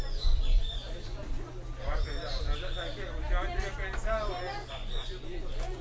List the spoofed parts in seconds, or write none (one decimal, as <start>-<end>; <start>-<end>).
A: 0.0-1.2; 4.7-5.8